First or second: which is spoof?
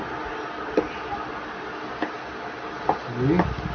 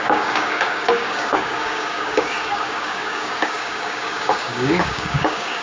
second